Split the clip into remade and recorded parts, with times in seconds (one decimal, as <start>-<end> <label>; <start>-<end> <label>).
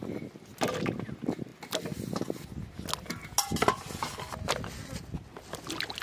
0.0-6.0 recorded